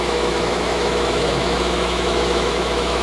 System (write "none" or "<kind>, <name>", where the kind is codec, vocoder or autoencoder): autoencoder, DAC-VAE